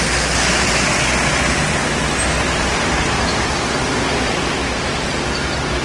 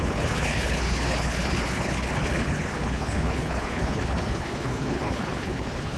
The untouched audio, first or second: first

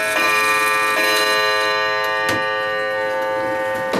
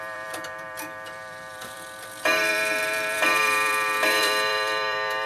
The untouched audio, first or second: first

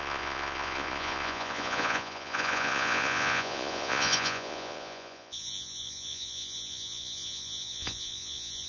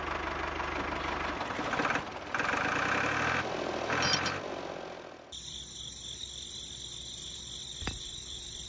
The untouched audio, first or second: second